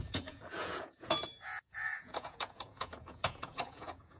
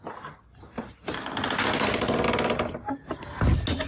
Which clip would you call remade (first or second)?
first